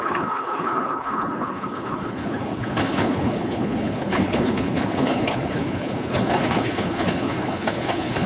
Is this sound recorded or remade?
remade